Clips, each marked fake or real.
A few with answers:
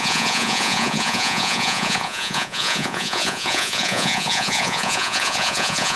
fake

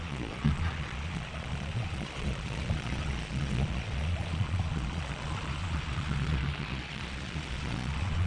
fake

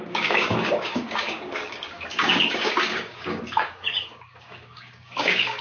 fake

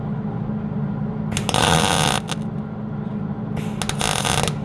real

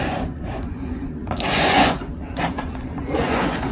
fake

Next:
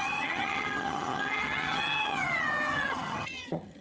fake